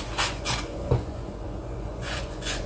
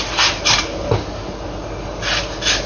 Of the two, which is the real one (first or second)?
second